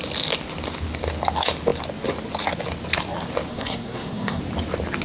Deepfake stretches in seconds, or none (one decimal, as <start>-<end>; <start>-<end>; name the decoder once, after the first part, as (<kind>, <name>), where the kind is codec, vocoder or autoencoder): 3.5-4.4 (codec, SNAC)

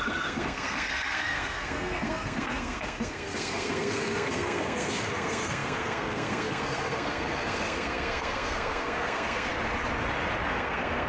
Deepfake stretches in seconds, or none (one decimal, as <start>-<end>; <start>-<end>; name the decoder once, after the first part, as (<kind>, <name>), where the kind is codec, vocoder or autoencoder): 0.0-9.5 (codec, SNAC); 10.5-11.1